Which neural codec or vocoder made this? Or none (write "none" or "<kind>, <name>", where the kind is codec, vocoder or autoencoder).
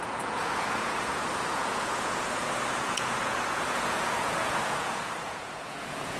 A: vocoder, Vocos